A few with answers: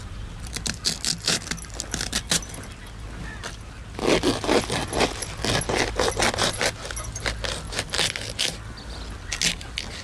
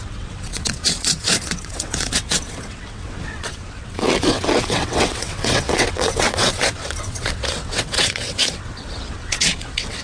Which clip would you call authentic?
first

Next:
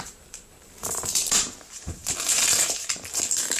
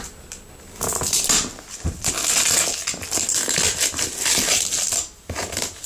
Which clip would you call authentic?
second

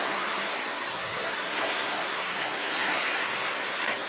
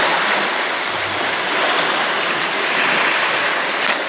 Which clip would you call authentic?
second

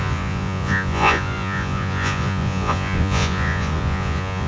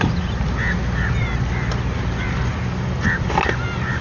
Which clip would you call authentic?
second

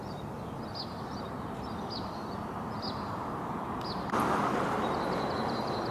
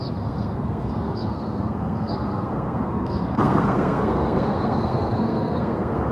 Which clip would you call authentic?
first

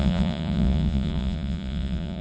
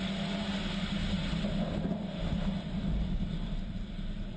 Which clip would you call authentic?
second